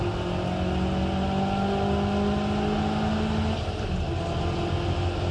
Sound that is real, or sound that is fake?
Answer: real